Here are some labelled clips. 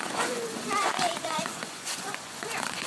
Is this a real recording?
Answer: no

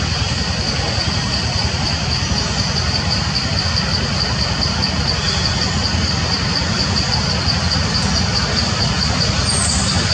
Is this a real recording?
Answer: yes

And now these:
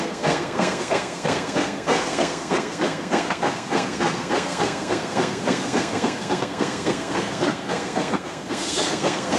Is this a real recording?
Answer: no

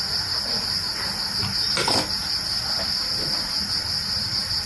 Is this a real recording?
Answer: yes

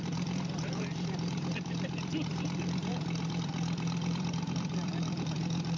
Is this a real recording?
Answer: no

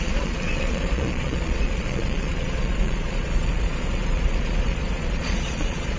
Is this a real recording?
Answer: no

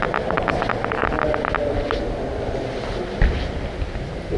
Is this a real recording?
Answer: yes